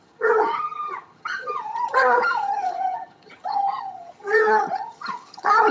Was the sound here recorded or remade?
remade